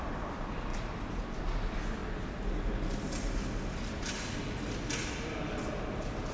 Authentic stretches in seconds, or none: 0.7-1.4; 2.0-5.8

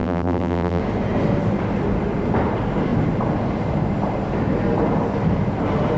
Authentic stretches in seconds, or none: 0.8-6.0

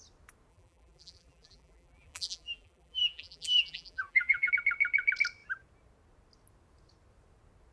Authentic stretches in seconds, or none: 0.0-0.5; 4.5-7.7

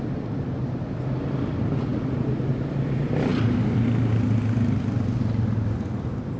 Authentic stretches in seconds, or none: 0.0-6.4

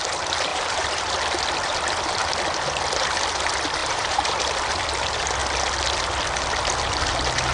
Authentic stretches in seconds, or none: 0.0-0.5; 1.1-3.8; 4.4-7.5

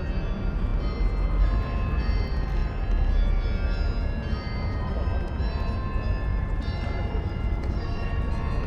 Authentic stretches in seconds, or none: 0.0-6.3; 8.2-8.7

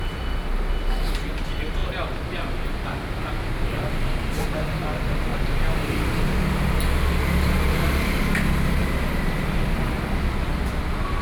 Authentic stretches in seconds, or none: 0.0-1.8; 3.9-11.2

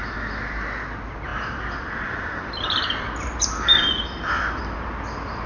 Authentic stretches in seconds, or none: 0.0-1.3; 4.6-5.5